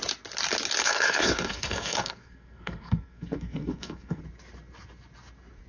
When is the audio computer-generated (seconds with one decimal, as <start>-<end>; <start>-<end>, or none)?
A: 0.8-4.2